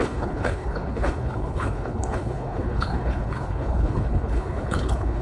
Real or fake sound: fake